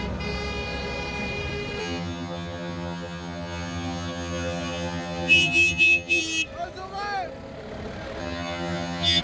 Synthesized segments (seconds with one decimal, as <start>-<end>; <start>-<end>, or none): 1.8-6.2; 8.2-9.2